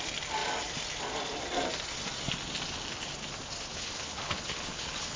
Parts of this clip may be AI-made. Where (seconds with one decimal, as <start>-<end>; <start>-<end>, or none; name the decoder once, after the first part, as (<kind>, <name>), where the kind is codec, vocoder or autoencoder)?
3.7-5.2 (codec, HILCodec)